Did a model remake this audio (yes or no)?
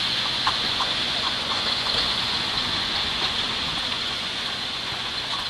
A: yes